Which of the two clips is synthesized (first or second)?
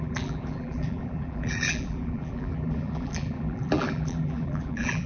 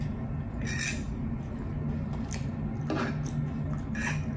first